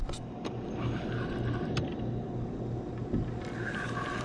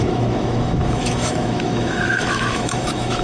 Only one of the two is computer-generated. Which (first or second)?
second